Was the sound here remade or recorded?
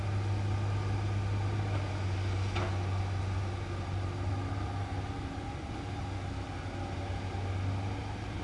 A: recorded